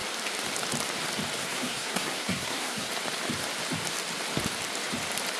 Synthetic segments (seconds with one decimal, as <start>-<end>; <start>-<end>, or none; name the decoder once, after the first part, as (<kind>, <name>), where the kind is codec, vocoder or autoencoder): 1.4-2.9 (codec, SNAC)